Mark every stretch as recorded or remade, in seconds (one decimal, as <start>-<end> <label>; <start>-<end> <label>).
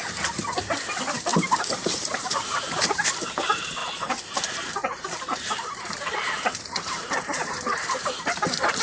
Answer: 0.0-1.3 recorded; 1.3-3.3 remade; 3.3-3.8 recorded; 3.8-8.8 remade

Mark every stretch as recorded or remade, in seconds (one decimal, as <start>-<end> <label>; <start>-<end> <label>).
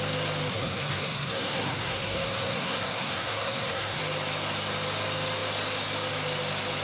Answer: 0.0-0.5 recorded; 0.5-4.0 remade; 4.0-6.8 recorded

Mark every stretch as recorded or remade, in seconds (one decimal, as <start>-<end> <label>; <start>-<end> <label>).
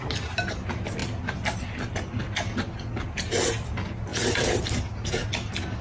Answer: 0.0-5.8 recorded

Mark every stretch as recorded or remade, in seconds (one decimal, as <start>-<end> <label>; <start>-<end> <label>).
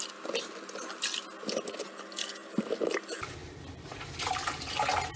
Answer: 0.0-5.2 recorded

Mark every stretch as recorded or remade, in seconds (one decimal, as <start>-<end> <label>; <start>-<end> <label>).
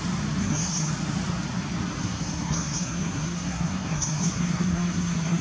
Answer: 0.0-0.4 recorded; 0.4-0.9 remade; 0.9-2.0 recorded; 2.0-5.4 remade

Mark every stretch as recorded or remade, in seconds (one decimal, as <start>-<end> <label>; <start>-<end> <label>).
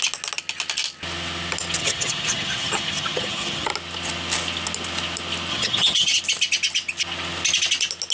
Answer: 0.0-1.8 recorded; 1.8-3.7 remade; 3.7-5.5 recorded; 5.5-6.2 remade; 6.2-8.1 recorded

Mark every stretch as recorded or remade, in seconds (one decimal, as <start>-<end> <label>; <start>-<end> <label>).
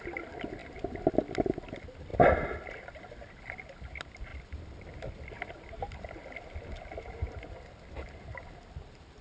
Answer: 0.0-9.2 recorded